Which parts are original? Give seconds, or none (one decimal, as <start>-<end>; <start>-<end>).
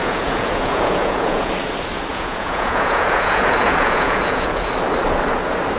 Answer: 1.5-2.1; 4.7-5.8